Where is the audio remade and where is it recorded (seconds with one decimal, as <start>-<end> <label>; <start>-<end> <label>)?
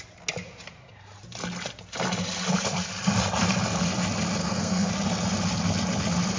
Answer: 0.0-4.4 recorded; 4.4-4.9 remade; 4.9-6.4 recorded